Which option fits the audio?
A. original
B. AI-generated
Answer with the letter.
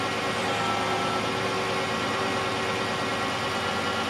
A